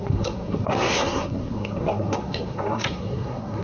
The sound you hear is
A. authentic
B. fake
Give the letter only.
B